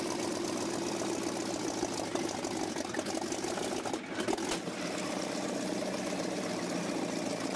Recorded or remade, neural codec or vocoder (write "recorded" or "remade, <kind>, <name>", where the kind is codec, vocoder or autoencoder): recorded